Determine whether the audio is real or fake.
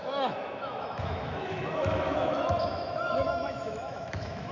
fake